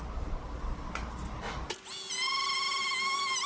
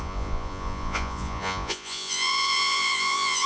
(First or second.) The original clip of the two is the first